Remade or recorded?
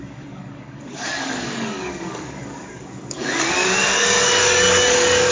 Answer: remade